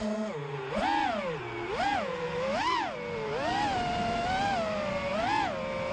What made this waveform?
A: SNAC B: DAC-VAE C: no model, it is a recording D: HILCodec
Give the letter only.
C